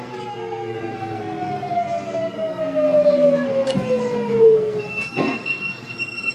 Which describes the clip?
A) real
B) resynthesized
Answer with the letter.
B